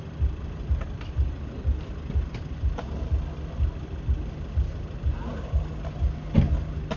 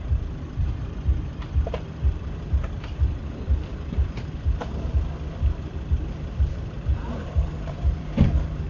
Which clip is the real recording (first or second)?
first